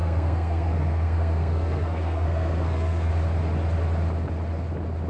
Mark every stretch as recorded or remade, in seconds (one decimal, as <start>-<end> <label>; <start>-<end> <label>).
0.0-3.1 remade; 3.1-5.1 recorded